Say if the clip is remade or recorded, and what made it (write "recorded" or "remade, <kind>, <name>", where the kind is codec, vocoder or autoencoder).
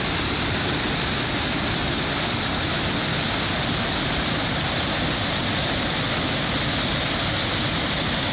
recorded